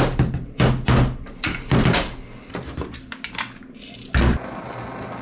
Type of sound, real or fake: real